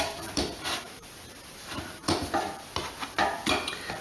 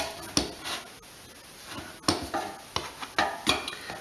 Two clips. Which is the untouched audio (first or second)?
second